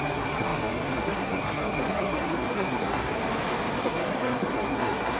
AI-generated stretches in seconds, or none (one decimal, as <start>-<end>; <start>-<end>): 0.0-3.1; 3.8-5.2

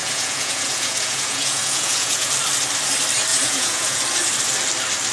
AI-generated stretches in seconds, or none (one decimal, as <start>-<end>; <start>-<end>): 0.0-2.3; 3.3-4.0

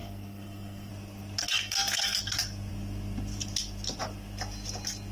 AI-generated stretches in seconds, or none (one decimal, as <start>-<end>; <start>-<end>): 0.0-0.9; 1.4-2.2

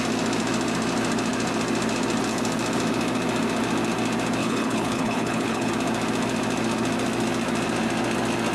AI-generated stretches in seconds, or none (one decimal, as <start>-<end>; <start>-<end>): 4.4-5.7